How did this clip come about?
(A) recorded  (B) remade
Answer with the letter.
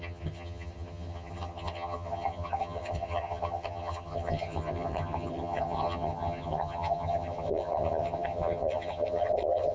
B